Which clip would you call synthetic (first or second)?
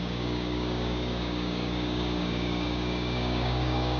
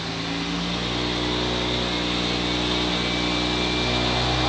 first